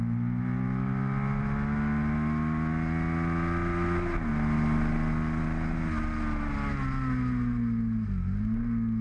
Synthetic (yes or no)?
no